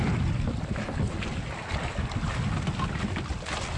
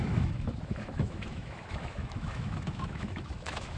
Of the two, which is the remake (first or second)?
second